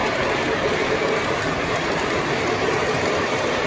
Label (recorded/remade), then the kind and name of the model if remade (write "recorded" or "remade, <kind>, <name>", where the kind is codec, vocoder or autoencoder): remade, vocoder, BigVGAN v2